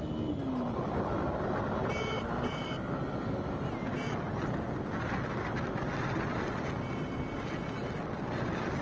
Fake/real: real